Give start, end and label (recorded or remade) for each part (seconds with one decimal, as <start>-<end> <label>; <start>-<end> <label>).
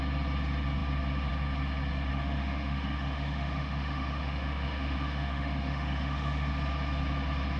0.0-2.1 recorded; 2.1-6.5 remade; 6.5-7.6 recorded